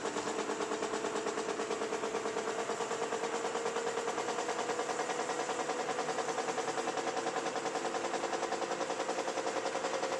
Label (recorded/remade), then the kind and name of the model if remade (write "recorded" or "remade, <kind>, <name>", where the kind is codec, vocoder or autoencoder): recorded